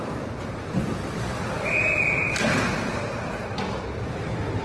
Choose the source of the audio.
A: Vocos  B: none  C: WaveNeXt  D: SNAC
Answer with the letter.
B